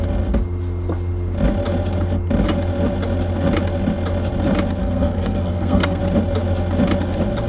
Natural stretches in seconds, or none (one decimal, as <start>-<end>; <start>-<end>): 0.0-4.8; 6.0-7.5